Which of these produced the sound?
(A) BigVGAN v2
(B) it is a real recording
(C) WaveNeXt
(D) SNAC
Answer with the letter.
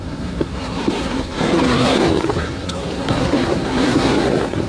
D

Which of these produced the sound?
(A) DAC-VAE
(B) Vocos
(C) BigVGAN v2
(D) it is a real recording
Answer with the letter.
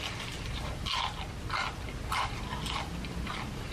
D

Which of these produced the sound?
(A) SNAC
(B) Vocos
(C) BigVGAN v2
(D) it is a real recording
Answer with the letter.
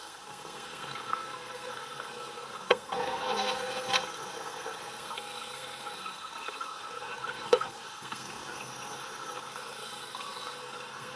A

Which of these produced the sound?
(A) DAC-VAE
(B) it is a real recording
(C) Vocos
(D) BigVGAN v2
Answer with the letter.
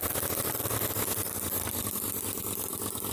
B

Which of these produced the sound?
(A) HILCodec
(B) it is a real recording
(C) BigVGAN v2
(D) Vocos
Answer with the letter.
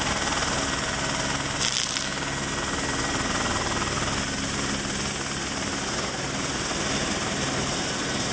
B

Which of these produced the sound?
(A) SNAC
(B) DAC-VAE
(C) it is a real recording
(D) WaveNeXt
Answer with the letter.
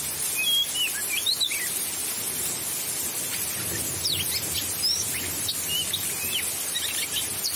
C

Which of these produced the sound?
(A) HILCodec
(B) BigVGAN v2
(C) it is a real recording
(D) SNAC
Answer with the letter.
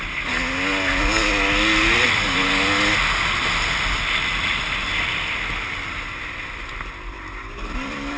C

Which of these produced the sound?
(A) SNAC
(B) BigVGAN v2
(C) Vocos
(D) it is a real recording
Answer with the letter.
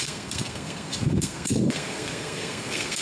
A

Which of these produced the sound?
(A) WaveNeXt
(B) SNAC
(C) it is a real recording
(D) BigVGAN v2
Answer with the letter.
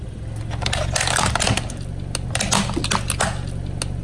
C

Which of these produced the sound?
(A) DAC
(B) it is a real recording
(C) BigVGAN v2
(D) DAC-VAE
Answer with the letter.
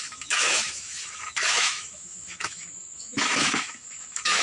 D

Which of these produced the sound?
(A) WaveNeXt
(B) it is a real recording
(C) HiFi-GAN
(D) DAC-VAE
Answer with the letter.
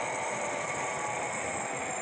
B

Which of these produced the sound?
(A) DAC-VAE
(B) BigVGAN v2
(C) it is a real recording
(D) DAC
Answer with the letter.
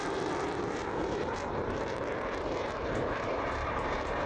B